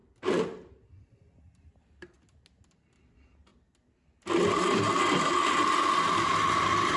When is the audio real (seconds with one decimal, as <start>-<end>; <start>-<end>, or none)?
0.0-7.0